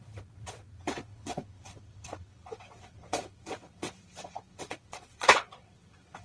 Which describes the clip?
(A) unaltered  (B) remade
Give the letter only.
B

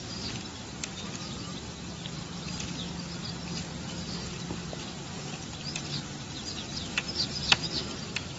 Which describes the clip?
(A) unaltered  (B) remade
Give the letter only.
B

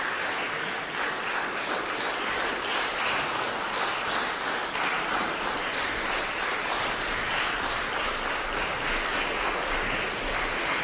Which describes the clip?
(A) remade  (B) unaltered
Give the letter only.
B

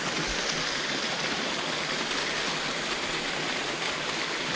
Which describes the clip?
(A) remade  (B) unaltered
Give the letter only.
B